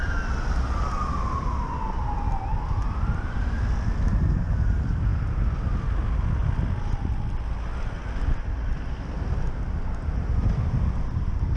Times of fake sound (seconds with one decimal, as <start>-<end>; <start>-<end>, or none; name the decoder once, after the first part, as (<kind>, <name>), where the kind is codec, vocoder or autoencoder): none